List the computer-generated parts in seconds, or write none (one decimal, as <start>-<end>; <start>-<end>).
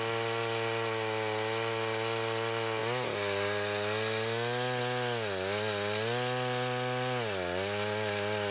none